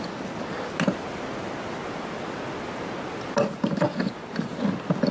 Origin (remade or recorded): recorded